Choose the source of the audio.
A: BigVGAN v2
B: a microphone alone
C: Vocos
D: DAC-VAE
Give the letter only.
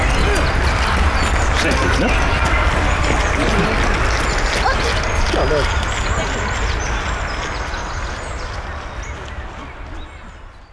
B